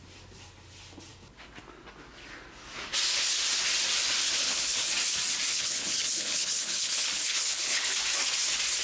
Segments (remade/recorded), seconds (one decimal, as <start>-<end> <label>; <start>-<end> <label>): 0.0-4.4 recorded; 4.4-4.9 remade; 4.9-5.5 recorded; 5.5-7.9 remade; 7.9-8.8 recorded